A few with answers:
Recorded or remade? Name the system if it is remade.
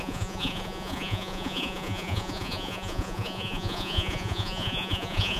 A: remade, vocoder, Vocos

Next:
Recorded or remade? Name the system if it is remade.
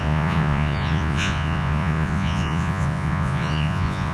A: remade, vocoder, Vocos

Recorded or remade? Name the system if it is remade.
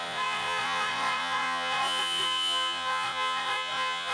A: remade, vocoder, Vocos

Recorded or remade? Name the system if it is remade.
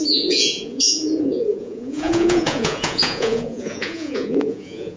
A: remade, vocoder, Vocos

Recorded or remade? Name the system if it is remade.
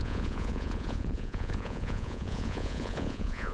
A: remade, vocoder, Vocos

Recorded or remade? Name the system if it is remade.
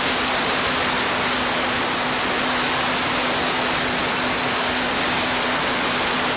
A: recorded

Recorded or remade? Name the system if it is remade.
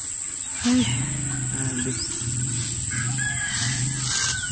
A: recorded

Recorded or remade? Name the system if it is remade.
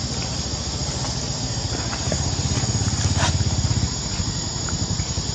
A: recorded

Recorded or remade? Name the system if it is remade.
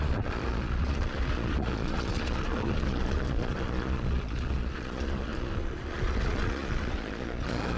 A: remade, vocoder, Vocos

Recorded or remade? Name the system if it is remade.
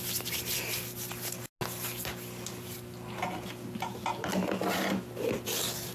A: recorded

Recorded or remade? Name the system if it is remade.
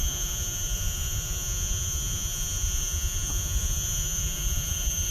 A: remade, vocoder, Vocos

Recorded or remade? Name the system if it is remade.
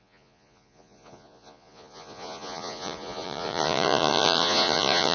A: remade, vocoder, Vocos